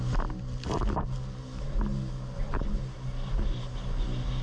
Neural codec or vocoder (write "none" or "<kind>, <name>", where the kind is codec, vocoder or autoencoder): none